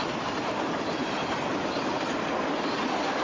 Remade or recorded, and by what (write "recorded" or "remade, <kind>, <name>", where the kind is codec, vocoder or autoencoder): remade, vocoder, BigVGAN v2